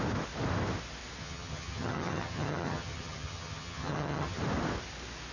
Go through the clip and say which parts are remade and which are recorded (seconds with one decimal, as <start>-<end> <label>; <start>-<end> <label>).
0.0-1.2 recorded; 1.2-4.4 remade; 4.4-5.3 recorded